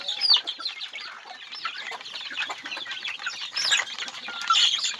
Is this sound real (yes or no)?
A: yes